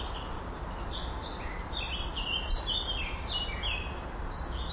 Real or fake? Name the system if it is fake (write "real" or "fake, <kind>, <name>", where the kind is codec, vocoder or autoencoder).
real